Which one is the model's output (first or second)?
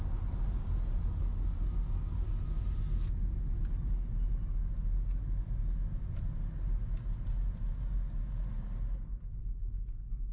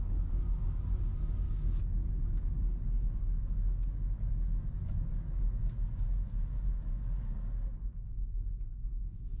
second